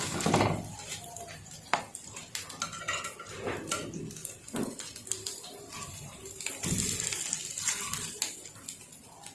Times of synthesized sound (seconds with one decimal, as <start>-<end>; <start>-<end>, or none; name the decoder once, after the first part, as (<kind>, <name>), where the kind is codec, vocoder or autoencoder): none